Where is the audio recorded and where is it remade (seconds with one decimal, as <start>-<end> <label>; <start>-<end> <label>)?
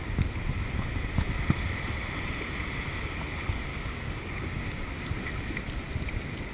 0.0-3.7 recorded; 3.7-4.9 remade; 4.9-6.5 recorded